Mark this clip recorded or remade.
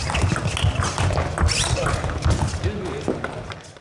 recorded